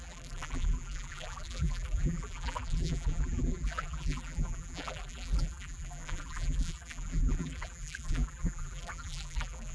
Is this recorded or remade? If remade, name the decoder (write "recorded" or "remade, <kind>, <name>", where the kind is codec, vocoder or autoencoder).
remade, vocoder, BigVGAN v2